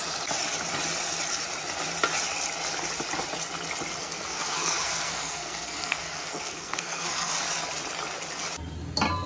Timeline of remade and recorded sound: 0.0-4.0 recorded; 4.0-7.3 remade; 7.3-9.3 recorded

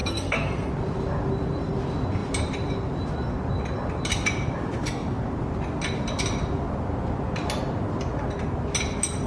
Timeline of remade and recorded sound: 0.0-0.7 remade; 0.7-9.3 recorded

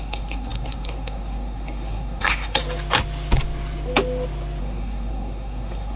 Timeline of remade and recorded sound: 0.0-2.6 remade; 2.6-4.6 recorded; 4.6-6.0 remade

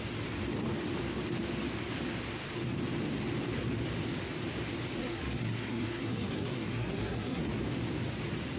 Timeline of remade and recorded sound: 0.0-5.0 recorded; 5.0-7.4 remade; 7.4-8.6 recorded